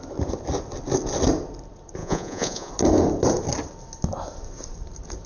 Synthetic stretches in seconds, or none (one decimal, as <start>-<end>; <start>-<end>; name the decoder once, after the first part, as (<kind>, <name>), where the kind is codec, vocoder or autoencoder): 2.0-2.7 (vocoder, Vocos)